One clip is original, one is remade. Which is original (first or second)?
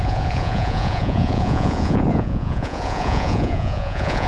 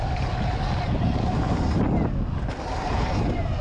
second